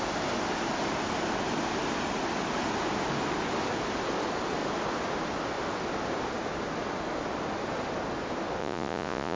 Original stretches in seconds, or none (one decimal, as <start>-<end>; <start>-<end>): 0.0-8.6